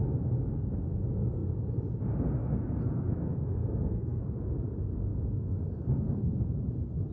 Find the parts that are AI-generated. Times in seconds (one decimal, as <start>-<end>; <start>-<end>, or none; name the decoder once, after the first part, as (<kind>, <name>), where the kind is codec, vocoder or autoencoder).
2.4-4.2 (codec, SNAC); 5.1-6.5